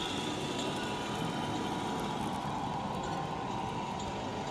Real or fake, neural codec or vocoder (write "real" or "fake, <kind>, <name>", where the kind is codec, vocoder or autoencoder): real